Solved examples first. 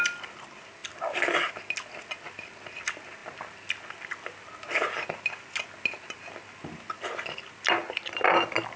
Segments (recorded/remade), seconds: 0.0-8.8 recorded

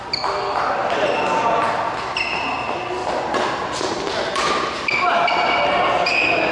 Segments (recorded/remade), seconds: 0.0-3.0 recorded; 3.0-4.5 remade; 4.5-6.5 recorded

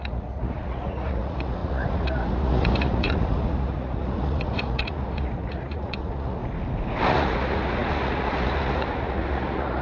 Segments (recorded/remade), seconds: 0.0-6.4 remade; 6.4-7.0 recorded; 7.0-9.8 remade

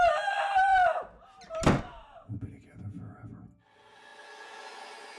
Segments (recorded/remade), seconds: 0.0-5.2 recorded